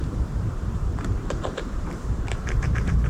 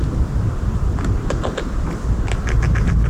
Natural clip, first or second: second